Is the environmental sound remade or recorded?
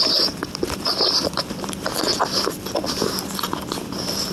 recorded